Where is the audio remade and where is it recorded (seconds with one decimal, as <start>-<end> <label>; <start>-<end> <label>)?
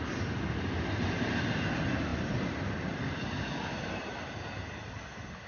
0.0-5.5 recorded